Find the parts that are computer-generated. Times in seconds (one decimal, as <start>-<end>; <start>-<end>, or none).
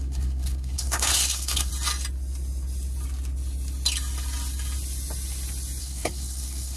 0.0-1.7; 5.8-6.8